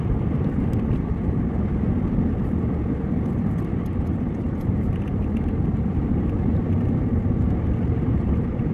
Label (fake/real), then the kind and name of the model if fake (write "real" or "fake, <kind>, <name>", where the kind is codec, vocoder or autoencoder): real